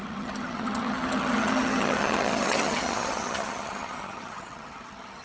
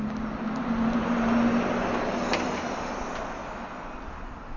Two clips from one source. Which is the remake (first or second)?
first